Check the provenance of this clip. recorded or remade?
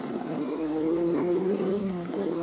remade